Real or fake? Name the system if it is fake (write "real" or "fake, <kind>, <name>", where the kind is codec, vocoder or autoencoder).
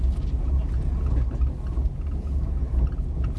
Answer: real